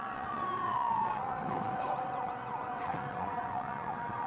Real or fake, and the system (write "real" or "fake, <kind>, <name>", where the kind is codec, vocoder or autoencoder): fake, vocoder, WaveNeXt